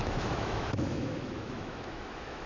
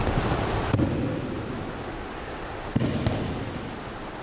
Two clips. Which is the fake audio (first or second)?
first